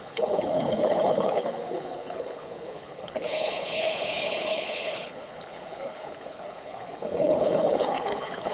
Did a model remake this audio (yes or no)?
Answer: yes